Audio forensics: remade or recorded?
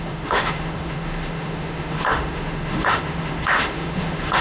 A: remade